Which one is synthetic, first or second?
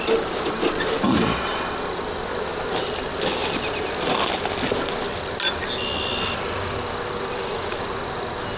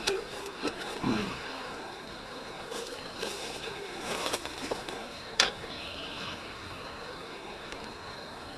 second